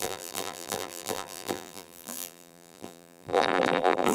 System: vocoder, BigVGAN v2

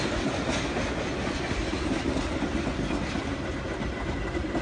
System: none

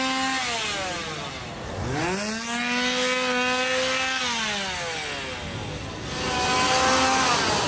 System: none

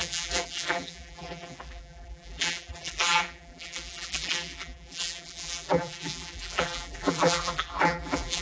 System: vocoder, BigVGAN v2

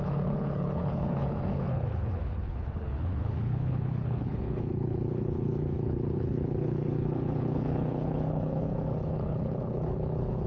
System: codec, HILCodec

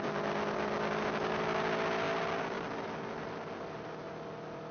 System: none